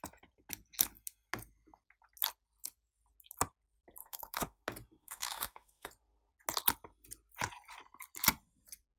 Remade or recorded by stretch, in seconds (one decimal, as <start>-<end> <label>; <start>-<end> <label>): 0.0-4.0 recorded; 4.0-4.6 remade; 4.6-5.0 recorded; 5.0-5.9 remade; 5.9-9.0 recorded